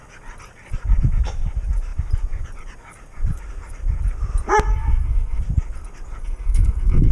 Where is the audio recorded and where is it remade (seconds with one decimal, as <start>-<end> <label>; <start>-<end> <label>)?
0.0-4.7 recorded; 4.7-5.4 remade; 5.4-6.2 recorded; 6.2-7.1 remade